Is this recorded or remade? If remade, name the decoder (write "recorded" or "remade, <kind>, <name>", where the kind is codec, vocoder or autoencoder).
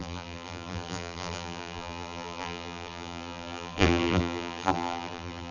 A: remade, vocoder, BigVGAN v2